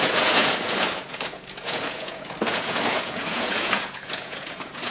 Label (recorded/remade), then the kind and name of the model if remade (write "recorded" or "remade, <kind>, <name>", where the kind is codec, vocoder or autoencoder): remade, vocoder, Vocos